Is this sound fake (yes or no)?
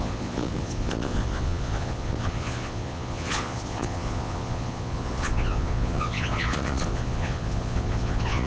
yes